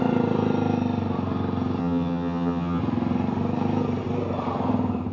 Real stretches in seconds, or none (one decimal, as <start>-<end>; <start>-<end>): 0.0-1.8; 2.8-5.1